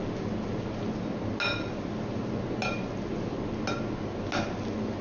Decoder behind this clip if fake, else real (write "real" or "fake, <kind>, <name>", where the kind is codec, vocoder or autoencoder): real